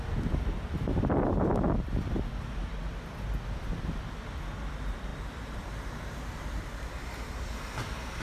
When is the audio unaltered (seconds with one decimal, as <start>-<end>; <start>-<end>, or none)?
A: 0.0-5.1; 6.4-8.2